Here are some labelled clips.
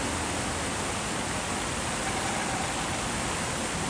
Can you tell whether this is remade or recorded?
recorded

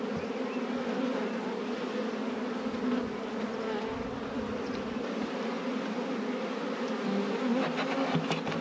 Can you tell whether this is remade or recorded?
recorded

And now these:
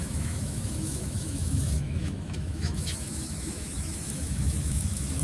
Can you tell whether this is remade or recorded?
remade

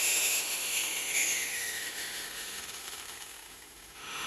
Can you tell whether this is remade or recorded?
remade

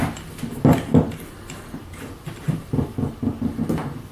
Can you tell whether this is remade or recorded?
recorded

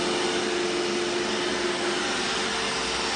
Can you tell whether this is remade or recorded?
recorded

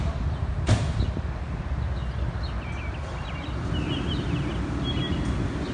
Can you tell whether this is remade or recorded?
recorded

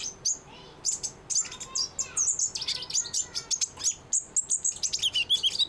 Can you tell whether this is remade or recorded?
recorded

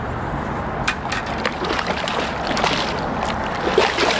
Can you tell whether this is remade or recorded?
recorded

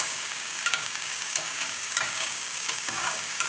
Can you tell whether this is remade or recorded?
remade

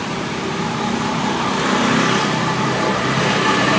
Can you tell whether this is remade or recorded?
remade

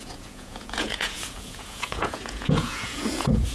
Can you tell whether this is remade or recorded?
remade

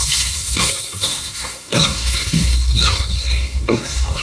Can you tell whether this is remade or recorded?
remade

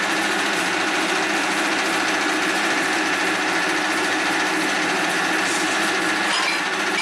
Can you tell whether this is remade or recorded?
recorded